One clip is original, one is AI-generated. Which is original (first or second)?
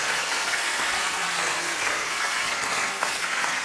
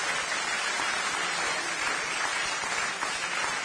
second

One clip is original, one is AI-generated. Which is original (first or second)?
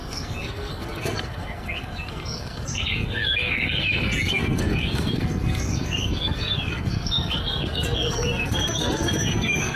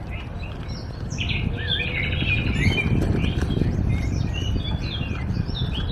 second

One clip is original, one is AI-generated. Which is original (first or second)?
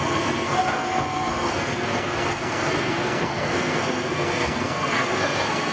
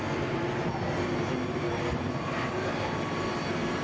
second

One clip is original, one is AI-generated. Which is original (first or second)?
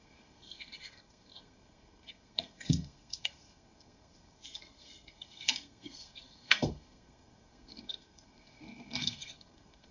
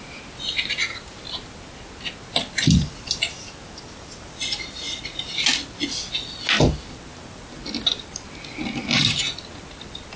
second